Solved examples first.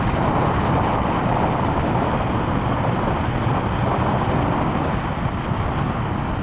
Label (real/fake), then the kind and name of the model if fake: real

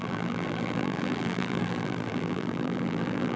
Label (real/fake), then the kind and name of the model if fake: fake, vocoder, BigVGAN v2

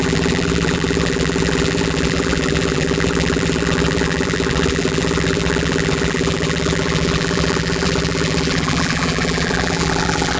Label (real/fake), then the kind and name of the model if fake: fake, vocoder, BigVGAN v2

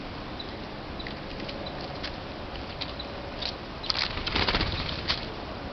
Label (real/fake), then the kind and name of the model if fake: real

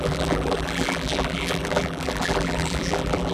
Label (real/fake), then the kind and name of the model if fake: fake, vocoder, BigVGAN v2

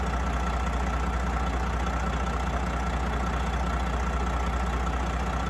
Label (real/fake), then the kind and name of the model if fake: real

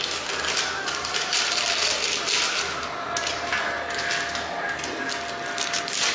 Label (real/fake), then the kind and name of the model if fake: real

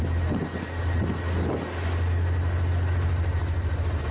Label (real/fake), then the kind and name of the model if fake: real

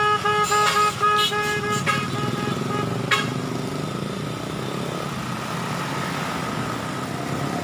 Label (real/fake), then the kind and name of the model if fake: real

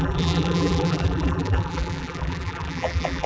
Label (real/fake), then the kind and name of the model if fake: fake, vocoder, BigVGAN v2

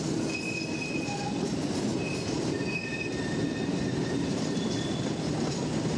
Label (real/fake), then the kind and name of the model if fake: fake, vocoder, BigVGAN v2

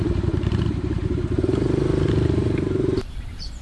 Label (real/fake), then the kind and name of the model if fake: fake, vocoder, BigVGAN v2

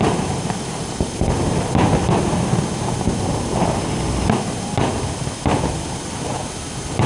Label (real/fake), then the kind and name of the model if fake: real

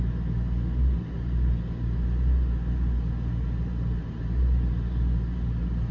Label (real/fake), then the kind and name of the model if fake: real